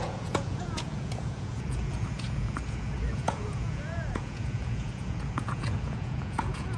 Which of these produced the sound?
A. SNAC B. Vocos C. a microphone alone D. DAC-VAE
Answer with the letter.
B